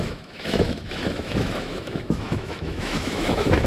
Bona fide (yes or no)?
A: no